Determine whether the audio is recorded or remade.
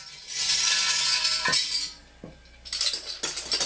recorded